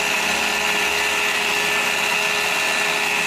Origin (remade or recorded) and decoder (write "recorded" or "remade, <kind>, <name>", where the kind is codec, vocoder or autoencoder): recorded